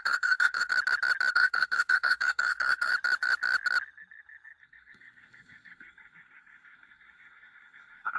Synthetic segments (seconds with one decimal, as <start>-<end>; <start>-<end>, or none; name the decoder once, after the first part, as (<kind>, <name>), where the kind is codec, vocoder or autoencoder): 0.0-0.7 (codec, SNAC); 1.3-2.9; 4.6-8.2